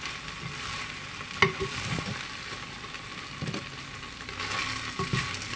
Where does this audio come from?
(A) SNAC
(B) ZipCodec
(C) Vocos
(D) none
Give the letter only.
D